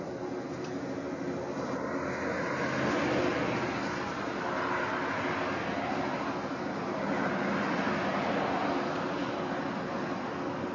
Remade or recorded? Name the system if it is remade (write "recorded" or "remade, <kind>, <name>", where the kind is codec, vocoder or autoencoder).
recorded